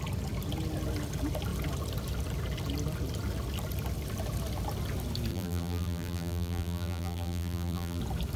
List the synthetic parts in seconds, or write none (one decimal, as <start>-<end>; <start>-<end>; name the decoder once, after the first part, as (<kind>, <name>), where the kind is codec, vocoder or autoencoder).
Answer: 5.3-8.0 (vocoder, BigVGAN v2)